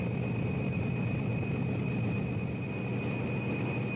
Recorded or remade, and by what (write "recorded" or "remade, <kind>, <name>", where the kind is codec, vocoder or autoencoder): recorded